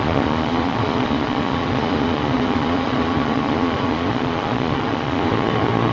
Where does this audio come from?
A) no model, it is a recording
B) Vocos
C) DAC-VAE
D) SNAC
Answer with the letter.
B